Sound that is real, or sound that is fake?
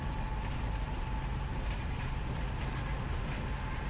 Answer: real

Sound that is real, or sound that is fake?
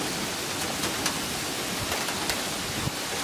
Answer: real